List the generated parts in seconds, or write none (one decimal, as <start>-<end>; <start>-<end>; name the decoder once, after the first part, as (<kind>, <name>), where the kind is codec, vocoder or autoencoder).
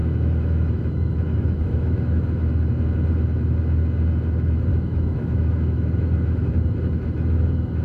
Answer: 0.0-2.5 (autoencoder, DAC-VAE); 4.7-6.5